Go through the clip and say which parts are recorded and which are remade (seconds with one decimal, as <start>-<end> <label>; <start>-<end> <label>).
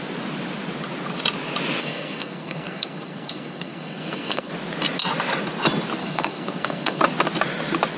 0.0-1.8 recorded; 1.8-4.5 remade; 4.5-6.0 recorded; 6.0-7.0 remade; 7.0-8.0 recorded